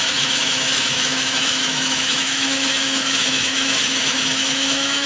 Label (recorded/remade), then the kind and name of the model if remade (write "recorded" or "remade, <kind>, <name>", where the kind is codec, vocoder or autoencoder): remade, autoencoder, DAC-VAE